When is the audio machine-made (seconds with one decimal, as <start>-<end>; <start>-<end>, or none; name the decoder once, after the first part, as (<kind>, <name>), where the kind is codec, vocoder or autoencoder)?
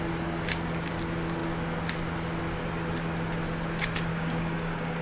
4.1-5.0 (codec, DAC)